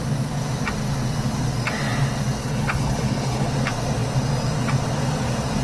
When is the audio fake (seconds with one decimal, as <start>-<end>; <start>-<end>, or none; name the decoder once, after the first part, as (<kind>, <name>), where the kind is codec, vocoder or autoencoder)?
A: 2.4-3.5 (codec, HILCodec)